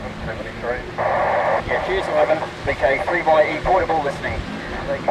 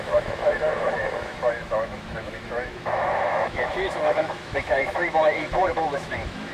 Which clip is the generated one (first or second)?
second